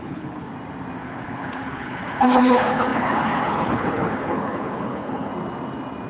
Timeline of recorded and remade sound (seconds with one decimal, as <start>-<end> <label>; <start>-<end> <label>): 0.0-0.5 remade; 0.5-1.0 recorded; 1.0-5.3 remade; 5.3-6.1 recorded